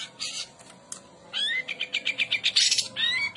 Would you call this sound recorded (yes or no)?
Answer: yes